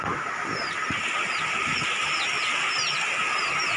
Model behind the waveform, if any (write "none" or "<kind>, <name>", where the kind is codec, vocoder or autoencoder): none